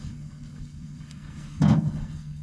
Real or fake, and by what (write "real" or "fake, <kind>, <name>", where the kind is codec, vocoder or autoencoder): fake, codec, SNAC